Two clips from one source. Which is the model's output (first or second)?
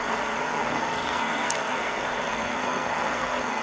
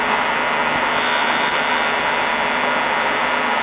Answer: first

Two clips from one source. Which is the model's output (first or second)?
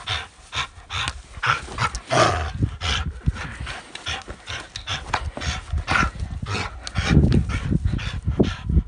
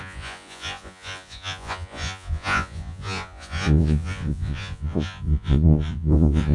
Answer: second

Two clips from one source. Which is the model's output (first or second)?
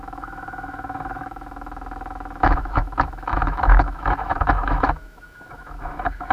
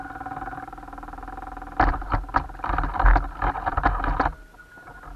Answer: first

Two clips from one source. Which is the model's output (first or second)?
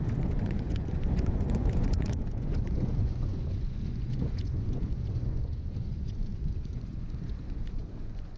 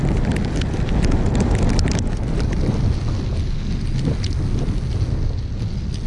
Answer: first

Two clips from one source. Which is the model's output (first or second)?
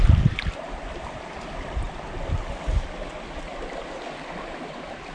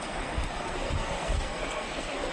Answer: second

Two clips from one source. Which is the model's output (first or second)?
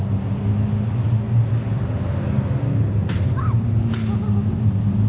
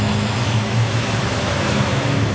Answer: second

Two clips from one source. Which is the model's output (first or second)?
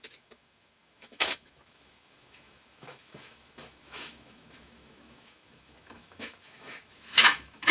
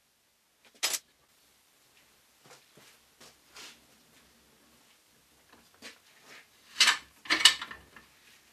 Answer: first